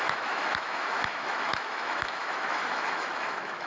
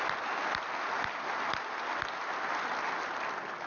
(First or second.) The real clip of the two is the second